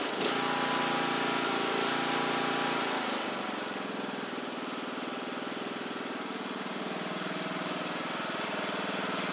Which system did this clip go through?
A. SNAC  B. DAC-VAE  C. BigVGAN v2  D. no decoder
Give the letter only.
D